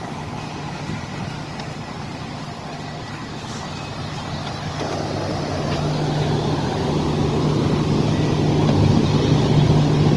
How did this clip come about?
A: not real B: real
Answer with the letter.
B